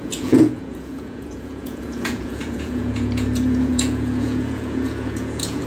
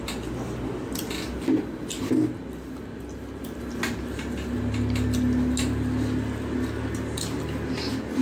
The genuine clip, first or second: second